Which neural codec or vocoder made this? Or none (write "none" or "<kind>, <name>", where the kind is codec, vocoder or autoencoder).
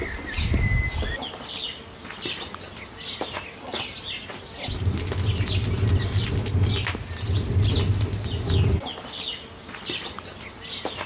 none